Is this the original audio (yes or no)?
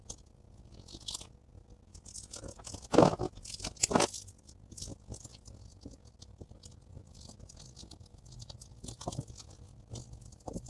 yes